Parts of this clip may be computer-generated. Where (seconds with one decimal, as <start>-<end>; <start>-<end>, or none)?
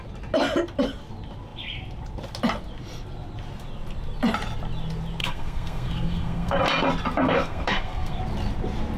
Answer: 5.2-6.6; 7.2-8.2